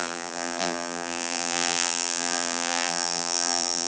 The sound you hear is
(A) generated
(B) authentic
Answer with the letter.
A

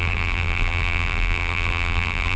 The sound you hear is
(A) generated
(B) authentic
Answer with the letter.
A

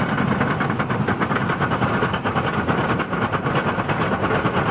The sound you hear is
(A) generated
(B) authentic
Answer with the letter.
B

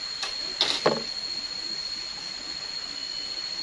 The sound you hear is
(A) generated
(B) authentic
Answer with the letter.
B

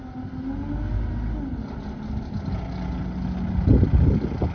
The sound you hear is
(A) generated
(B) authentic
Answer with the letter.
B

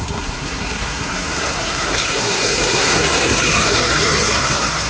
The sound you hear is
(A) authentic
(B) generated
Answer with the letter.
B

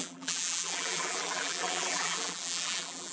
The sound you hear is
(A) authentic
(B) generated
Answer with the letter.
B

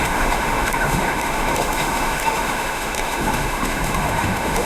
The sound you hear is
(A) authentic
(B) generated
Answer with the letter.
B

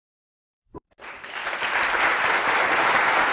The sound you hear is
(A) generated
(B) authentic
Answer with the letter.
B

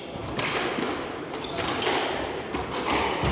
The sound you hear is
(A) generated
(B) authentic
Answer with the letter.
B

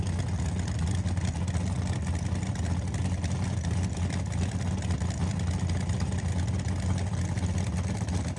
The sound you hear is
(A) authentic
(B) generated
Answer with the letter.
A